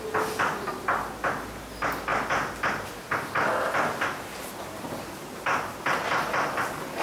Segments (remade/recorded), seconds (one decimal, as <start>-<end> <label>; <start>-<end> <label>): 0.0-7.0 recorded